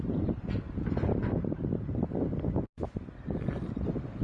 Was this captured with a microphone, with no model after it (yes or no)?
yes